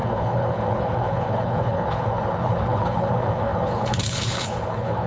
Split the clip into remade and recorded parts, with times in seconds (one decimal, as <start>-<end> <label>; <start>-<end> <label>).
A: 0.0-5.1 remade